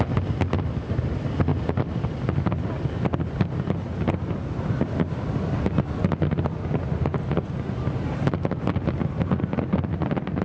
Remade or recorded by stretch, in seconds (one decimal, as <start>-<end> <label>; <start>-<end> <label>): 0.0-10.4 recorded